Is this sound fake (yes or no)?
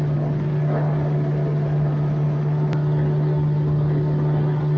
no